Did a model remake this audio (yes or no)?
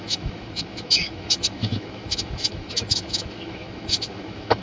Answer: yes